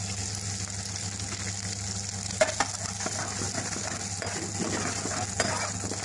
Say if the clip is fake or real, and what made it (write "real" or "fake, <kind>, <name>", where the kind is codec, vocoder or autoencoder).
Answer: real